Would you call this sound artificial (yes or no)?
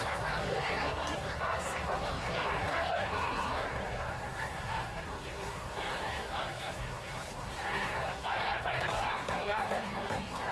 yes